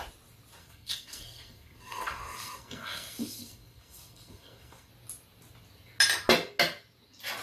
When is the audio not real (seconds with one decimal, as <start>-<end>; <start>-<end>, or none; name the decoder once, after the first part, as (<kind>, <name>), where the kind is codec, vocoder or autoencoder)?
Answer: 0.6-4.9 (codec, SNAC)